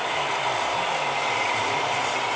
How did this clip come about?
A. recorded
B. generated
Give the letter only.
A